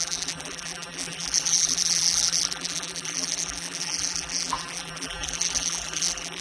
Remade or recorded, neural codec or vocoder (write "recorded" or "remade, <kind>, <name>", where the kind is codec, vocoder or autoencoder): remade, vocoder, BigVGAN v2